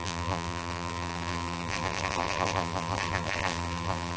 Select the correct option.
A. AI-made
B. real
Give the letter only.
A